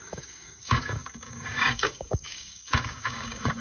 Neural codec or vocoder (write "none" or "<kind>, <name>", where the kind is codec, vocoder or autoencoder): codec, DAC